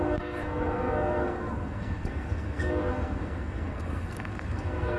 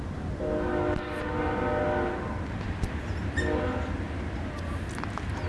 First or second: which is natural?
second